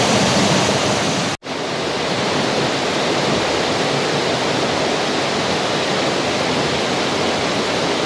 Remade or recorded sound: recorded